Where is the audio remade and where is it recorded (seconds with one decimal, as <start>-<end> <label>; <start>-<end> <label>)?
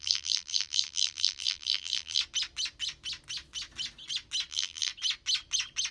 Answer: 0.0-2.2 remade; 2.2-4.5 recorded; 4.5-4.9 remade; 4.9-5.9 recorded